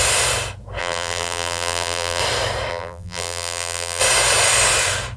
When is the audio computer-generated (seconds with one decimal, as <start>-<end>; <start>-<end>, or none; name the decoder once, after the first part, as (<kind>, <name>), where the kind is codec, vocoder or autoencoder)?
0.8-2.2 (vocoder, BigVGAN v2); 2.7-4.0